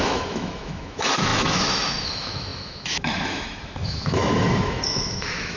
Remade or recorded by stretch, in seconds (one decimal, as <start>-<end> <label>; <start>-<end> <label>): 0.0-5.6 remade